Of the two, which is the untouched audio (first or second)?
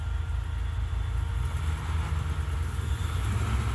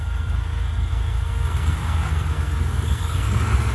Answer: first